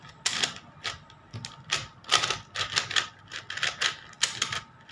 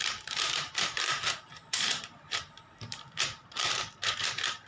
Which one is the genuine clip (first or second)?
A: first